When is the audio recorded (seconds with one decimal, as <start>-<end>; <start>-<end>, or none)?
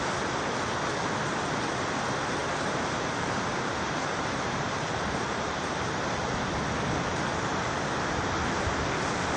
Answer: 0.0-2.4; 6.5-9.4